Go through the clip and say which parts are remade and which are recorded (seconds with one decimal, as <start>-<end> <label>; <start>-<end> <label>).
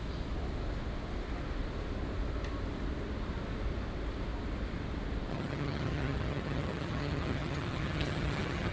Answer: 0.0-5.3 recorded; 5.3-8.7 remade